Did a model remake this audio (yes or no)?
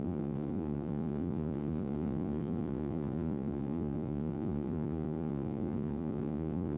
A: yes